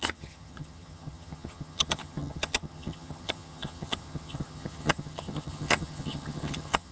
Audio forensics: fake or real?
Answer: fake